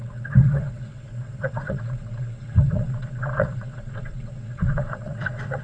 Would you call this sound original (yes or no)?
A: no